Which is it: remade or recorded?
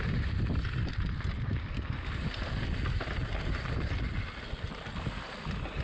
recorded